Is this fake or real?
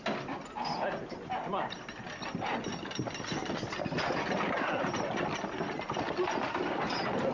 real